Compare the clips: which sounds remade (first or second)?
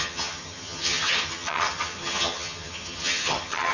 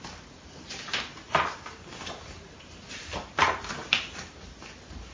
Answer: first